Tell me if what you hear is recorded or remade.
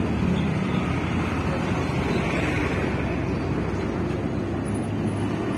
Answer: recorded